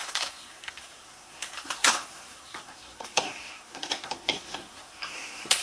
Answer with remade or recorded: remade